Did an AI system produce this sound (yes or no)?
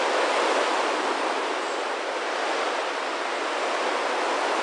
no